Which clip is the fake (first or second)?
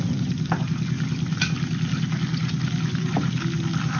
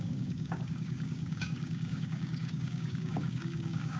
second